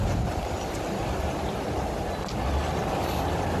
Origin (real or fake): real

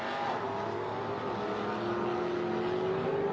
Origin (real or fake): real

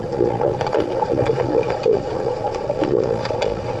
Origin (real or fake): fake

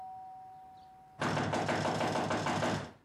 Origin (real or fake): real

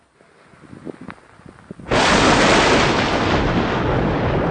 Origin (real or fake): real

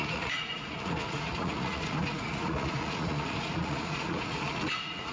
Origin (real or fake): fake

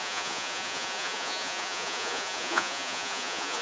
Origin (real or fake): fake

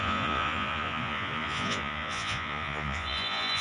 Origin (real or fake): fake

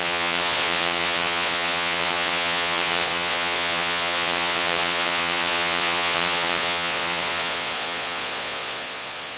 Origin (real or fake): fake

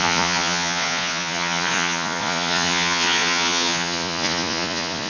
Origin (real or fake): fake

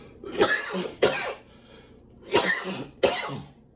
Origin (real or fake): real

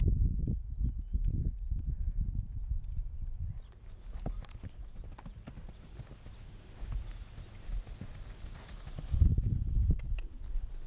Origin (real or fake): real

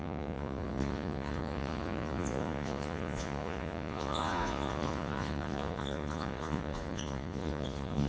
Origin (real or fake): fake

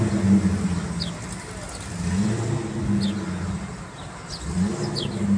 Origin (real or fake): real